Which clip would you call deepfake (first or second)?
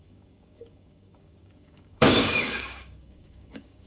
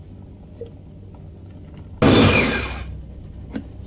first